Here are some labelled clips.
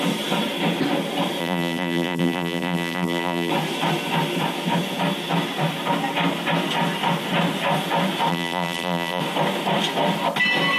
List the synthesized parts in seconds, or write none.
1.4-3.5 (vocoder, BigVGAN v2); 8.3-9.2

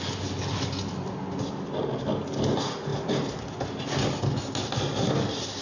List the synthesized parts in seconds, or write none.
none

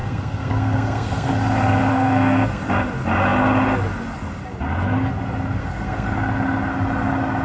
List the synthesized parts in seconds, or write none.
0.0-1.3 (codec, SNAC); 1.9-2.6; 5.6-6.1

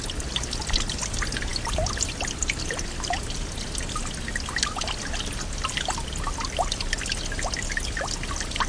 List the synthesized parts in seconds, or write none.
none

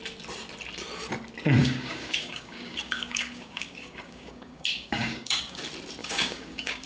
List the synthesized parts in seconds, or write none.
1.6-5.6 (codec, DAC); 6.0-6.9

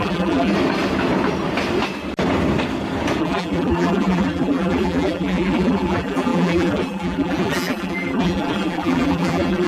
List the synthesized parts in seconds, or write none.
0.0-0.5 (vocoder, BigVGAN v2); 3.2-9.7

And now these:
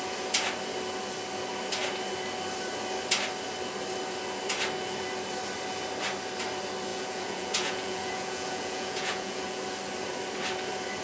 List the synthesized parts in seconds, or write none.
6.9-9.6 (vocoder, Vocos)

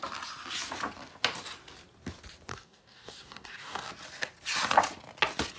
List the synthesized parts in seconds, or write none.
2.5-3.9 (codec, DAC)